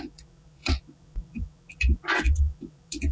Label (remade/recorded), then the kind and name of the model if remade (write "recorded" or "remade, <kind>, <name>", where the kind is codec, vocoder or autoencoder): remade, vocoder, WaveNeXt